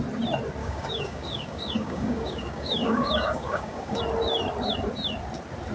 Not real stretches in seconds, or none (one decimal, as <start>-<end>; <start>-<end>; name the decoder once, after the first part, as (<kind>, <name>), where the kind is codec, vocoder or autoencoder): 0.6-4.0 (codec, DAC)